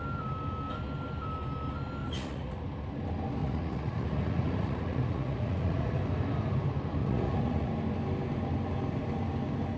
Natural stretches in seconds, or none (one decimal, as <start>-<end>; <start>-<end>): 0.0-2.0; 2.6-3.4; 6.0-7.0; 7.7-9.8